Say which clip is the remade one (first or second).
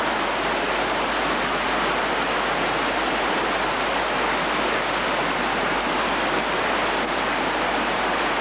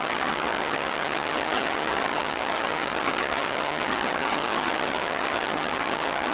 second